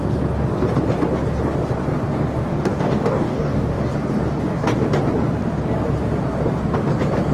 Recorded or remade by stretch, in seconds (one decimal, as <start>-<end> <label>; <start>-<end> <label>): 0.0-2.5 recorded; 2.5-3.8 remade; 3.8-7.3 recorded